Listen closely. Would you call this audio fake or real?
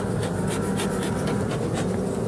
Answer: real